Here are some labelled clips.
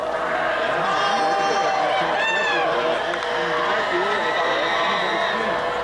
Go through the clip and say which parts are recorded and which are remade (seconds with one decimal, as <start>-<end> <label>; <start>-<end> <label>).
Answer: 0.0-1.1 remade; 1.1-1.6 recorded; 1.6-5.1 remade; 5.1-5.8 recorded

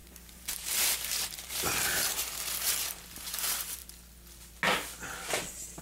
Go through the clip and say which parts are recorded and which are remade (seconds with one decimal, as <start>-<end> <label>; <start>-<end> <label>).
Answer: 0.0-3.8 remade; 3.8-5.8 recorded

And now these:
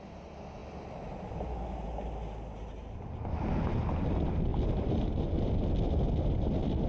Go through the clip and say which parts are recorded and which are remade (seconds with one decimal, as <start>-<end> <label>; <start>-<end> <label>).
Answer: 0.0-4.5 recorded; 4.5-5.2 remade; 5.2-6.9 recorded

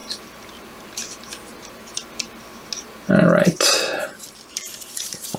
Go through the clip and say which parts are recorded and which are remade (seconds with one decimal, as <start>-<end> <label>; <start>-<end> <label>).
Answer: 0.0-3.1 recorded; 3.1-3.7 remade; 3.7-4.3 recorded; 4.3-5.4 remade